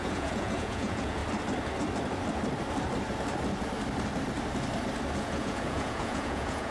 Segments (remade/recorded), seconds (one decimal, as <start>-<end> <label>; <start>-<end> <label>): 0.0-1.2 remade; 1.2-5.2 recorded; 5.2-6.7 remade